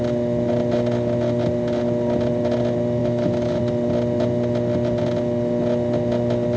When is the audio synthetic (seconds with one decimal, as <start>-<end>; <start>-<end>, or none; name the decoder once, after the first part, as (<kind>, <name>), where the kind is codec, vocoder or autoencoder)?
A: 3.0-3.6 (autoencoder, DAC-VAE)